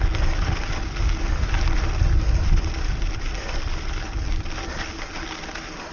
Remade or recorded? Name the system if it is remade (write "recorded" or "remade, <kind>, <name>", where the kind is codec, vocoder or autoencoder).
recorded